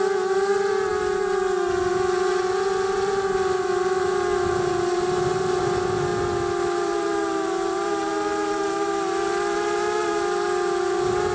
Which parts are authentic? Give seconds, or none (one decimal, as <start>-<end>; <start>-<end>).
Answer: none